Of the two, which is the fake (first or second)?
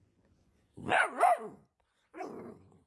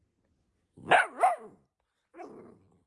first